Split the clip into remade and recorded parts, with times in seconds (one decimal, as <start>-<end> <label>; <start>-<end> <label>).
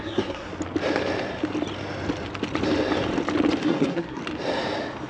0.0-0.5 remade; 0.5-3.6 recorded; 3.6-4.2 remade; 4.2-5.1 recorded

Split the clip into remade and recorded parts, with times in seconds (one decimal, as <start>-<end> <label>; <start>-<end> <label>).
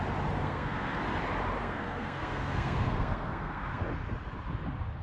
0.0-0.4 recorded; 0.4-1.0 remade; 1.0-1.6 recorded; 1.6-3.8 remade; 3.8-5.0 recorded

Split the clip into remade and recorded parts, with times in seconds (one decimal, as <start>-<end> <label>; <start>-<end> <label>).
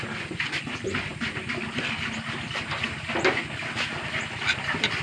0.0-5.0 recorded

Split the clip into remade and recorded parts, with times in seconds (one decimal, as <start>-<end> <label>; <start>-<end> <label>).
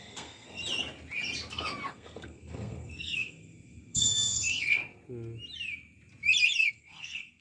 0.0-0.6 remade; 0.6-1.9 recorded; 1.9-4.8 remade; 4.8-6.7 recorded; 6.7-7.4 remade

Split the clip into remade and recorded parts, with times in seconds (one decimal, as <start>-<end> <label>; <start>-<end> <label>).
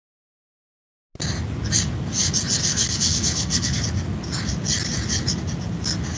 0.0-2.7 recorded; 2.7-3.8 remade; 3.8-6.2 recorded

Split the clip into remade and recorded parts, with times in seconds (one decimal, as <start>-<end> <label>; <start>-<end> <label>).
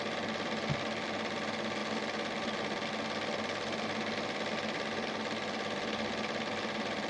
0.0-7.1 recorded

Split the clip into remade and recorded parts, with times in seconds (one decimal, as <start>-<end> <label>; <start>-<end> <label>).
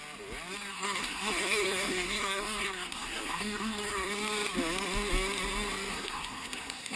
0.0-0.7 recorded; 0.7-4.1 remade; 4.1-5.9 recorded; 5.9-7.0 remade